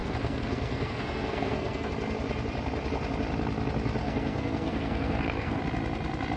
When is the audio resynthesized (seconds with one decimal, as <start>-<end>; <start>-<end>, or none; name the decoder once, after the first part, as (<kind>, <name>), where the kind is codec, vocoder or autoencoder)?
0.0-1.9 (codec, SNAC); 4.0-5.6